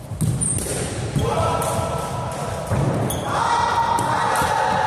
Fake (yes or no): no